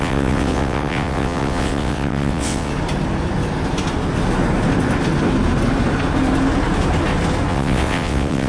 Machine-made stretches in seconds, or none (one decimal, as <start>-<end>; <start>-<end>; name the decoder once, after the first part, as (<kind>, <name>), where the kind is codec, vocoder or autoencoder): 0.0-2.7 (vocoder, WaveNeXt); 7.5-8.5